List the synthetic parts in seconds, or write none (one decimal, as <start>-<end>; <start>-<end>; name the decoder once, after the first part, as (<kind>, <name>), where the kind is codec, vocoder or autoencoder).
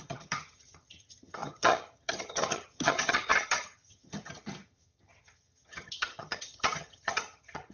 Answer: 0.0-7.7 (vocoder, HiFi-GAN)